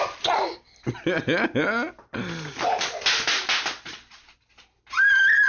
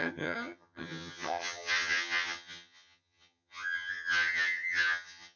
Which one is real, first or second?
first